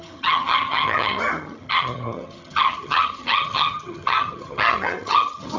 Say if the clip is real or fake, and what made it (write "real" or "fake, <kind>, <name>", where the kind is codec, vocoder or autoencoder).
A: fake, vocoder, HiFi-GAN